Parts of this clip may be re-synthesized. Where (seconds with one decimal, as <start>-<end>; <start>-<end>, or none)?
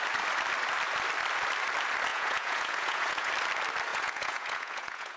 2.1-3.3; 3.9-5.2